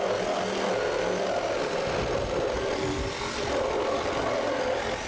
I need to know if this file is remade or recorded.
recorded